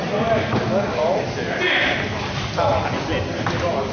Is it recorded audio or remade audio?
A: recorded